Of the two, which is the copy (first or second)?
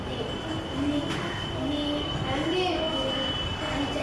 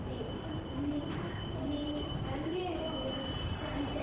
second